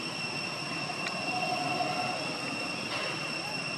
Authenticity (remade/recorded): recorded